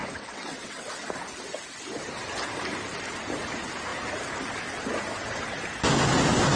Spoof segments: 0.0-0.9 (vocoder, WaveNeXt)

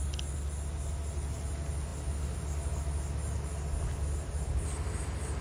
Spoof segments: none

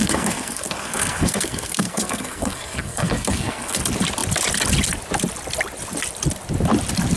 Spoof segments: 0.0-3.8 (codec, SNAC)